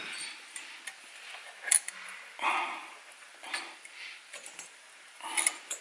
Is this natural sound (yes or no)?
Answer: yes